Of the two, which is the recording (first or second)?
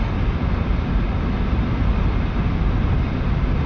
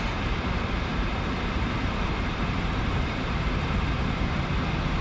first